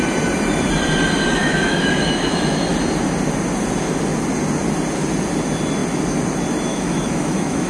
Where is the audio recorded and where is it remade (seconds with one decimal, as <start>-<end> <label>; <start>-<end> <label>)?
0.0-1.4 recorded; 1.4-2.7 remade; 2.7-6.7 recorded; 6.7-7.7 remade